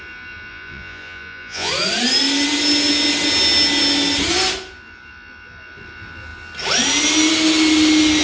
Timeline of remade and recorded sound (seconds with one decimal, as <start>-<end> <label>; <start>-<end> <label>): 0.0-0.5 recorded; 0.5-1.7 remade; 1.7-8.2 recorded